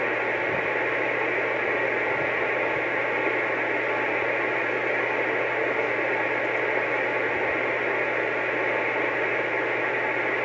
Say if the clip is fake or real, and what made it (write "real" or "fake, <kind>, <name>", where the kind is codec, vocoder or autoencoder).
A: real